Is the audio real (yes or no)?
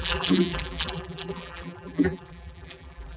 no